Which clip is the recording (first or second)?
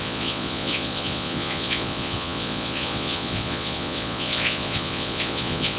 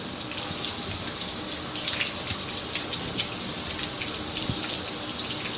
second